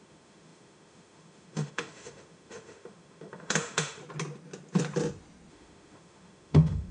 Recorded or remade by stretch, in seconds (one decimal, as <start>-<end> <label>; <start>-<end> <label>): 0.0-4.0 remade; 4.0-5.5 recorded; 5.5-6.9 remade